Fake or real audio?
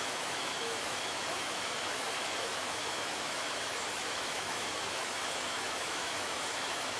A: fake